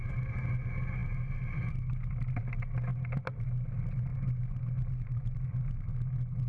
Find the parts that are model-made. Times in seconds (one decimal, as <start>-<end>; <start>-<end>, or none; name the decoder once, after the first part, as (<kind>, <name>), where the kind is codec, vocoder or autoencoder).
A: 4.1-5.4 (vocoder, BigVGAN v2)